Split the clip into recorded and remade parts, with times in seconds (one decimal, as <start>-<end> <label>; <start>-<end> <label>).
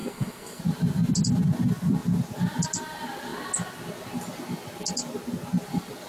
0.0-0.6 remade; 0.6-6.1 recorded